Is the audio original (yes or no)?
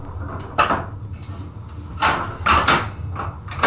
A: yes